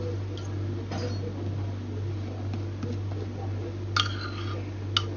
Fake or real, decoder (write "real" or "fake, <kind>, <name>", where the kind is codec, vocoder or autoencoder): real